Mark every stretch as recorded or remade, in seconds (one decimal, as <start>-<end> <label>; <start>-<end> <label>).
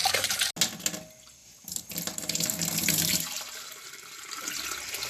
0.0-0.5 remade; 0.5-1.4 recorded; 1.4-4.5 remade; 4.5-5.1 recorded